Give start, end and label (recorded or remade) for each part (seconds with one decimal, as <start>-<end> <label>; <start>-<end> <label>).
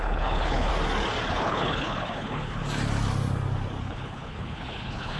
0.0-0.7 remade; 0.7-1.3 recorded; 1.3-2.6 remade; 2.6-3.8 recorded; 3.8-5.2 remade